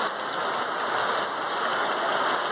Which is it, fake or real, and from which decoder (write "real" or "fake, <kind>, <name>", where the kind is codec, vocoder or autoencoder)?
real